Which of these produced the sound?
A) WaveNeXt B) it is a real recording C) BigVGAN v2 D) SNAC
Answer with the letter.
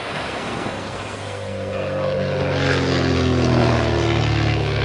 D